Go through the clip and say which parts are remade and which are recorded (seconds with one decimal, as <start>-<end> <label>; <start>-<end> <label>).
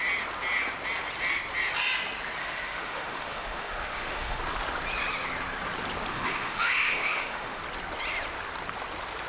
0.0-2.4 recorded; 2.4-4.4 remade; 4.4-6.1 recorded; 6.1-7.6 remade; 7.6-9.3 recorded